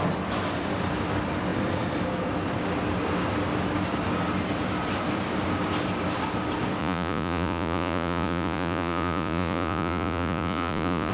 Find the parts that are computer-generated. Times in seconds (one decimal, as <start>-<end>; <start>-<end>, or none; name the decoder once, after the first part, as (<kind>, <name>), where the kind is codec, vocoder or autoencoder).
6.8-11.1 (vocoder, Vocos)